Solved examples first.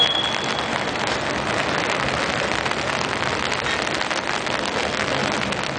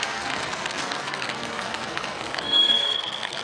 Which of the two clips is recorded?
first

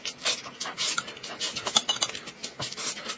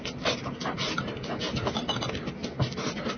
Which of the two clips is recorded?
first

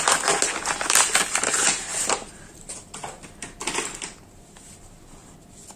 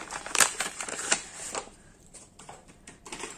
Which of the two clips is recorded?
first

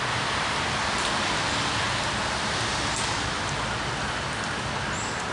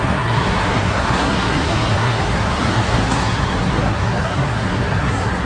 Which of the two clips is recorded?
first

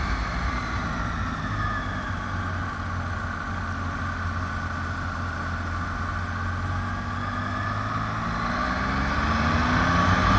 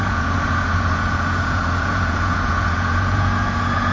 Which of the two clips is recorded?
first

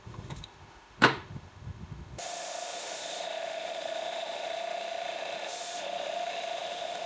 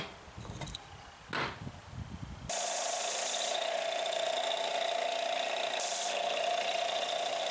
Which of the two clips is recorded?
second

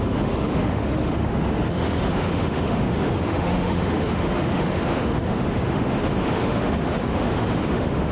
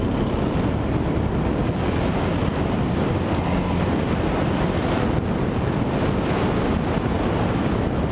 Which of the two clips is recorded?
second